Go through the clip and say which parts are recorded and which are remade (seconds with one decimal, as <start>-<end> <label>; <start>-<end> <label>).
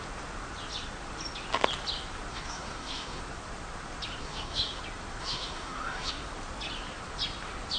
0.0-2.3 recorded; 2.3-3.2 remade; 3.2-4.2 recorded; 4.2-4.8 remade; 4.8-5.2 recorded; 5.2-6.1 remade; 6.1-7.8 recorded